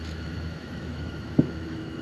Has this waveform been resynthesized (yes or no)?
yes